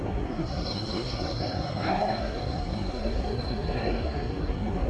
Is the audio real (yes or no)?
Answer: no